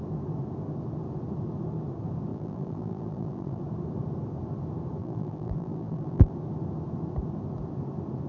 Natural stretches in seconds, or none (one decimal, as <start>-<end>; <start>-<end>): 0.0-2.3; 3.6-5.0; 6.3-8.3